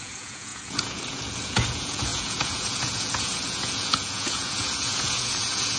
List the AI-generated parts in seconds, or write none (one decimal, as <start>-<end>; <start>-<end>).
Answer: 0.0-5.8